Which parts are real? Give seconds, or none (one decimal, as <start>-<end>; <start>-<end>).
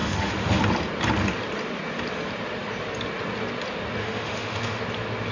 0.6-4.0; 4.8-5.3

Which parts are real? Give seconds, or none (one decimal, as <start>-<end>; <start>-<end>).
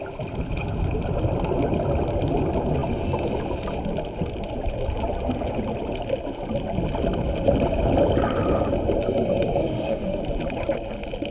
0.0-9.6; 10.2-11.3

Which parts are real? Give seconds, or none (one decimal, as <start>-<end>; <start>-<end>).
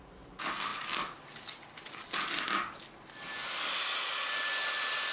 0.0-5.1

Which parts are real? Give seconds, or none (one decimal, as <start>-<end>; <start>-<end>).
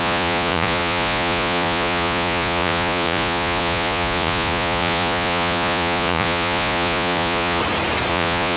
7.6-8.1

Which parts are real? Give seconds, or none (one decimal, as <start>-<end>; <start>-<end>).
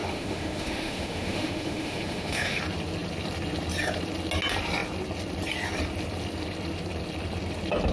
2.6-7.9